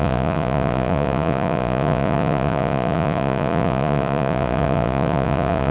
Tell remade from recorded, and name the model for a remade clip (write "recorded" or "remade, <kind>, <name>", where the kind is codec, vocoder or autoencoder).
remade, vocoder, Vocos